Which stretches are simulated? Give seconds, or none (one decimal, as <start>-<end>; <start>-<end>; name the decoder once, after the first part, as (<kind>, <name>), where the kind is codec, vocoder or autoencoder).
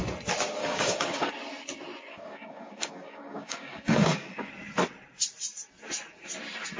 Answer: 0.6-1.3 (codec, DAC); 2.1-4.5